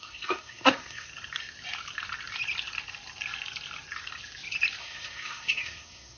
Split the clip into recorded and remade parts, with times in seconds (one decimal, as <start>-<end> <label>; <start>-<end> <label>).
0.0-1.1 remade; 1.1-4.8 recorded; 4.8-6.2 remade